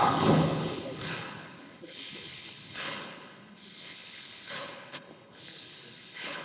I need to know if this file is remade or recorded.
remade